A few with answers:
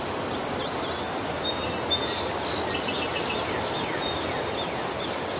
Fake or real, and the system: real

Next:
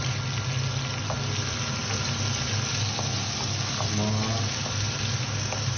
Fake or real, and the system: real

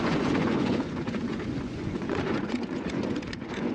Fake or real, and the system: fake, vocoder, Vocos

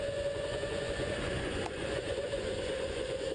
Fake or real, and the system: fake, vocoder, Vocos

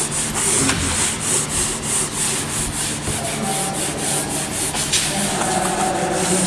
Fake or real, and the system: real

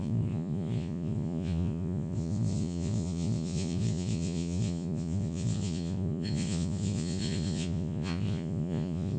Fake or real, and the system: fake, vocoder, Vocos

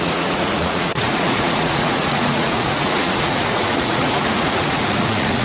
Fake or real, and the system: fake, vocoder, Vocos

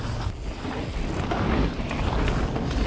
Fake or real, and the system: real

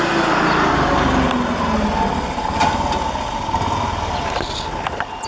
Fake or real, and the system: real